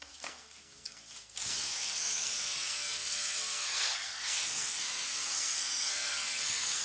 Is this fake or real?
fake